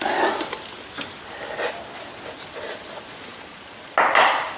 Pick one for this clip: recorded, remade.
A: recorded